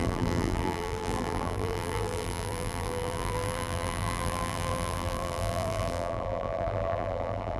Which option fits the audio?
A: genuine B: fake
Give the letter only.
B